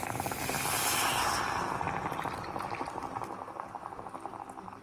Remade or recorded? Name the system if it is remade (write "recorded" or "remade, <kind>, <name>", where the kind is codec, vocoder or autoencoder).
recorded